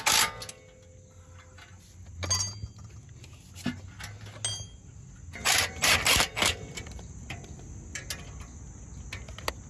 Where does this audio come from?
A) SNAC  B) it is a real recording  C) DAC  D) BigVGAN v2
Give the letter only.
B